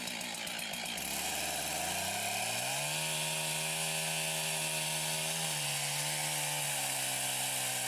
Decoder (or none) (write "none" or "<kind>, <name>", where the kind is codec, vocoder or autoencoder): none